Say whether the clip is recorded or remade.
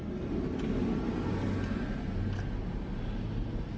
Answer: recorded